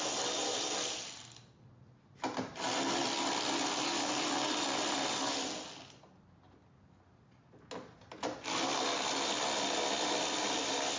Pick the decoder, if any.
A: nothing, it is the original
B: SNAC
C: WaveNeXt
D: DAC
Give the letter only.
A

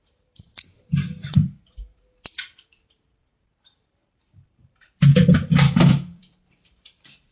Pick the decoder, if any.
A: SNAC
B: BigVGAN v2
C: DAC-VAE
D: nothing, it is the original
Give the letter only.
B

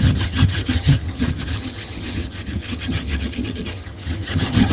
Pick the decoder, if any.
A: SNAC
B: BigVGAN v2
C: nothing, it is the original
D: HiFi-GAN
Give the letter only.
D